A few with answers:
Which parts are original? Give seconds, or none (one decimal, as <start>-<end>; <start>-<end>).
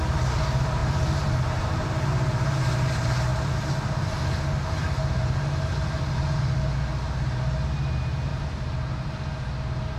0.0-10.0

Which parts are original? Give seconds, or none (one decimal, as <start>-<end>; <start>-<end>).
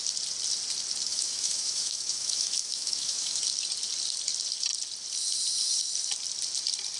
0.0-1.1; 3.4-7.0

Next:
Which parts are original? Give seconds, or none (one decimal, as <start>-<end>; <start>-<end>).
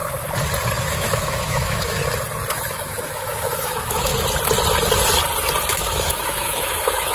0.0-0.9; 2.0-2.5; 4.1-5.7